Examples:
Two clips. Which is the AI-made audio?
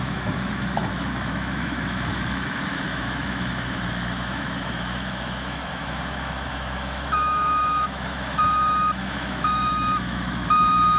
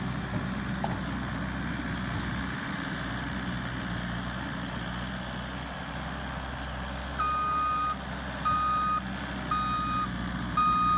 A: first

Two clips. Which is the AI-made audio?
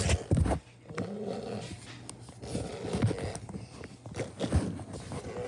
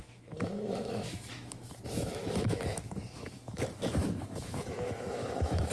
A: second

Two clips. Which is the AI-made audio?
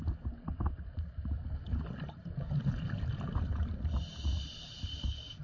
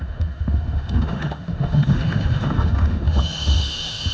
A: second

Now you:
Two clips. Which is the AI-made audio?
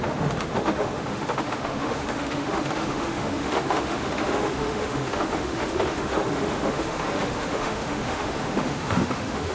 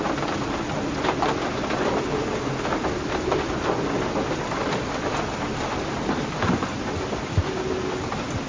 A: first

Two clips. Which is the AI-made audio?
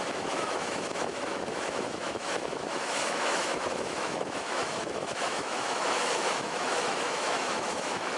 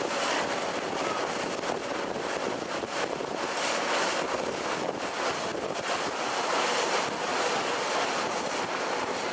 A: first